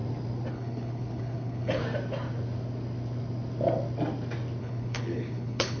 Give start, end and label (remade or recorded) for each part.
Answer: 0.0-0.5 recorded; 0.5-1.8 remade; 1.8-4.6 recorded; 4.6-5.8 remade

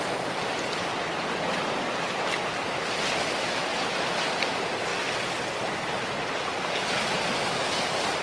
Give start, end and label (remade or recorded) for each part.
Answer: 0.0-8.2 recorded

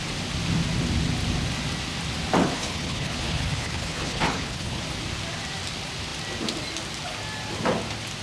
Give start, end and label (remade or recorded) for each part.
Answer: 0.0-2.4 recorded; 2.4-4.8 remade; 4.8-8.2 recorded